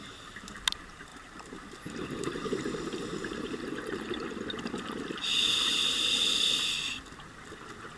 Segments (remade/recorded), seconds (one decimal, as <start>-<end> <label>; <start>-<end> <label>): 0.0-1.1 recorded; 1.1-3.6 remade; 3.6-8.0 recorded